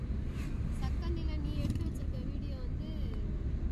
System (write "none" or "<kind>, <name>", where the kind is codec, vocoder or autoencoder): none